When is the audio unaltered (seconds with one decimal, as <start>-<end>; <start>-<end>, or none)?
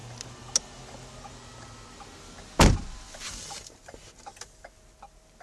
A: 0.0-5.4